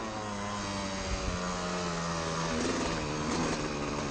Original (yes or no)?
yes